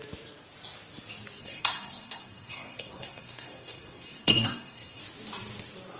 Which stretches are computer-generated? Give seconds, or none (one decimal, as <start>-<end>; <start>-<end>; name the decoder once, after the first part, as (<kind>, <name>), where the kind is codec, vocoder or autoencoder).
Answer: 1.4-5.0 (codec, SNAC)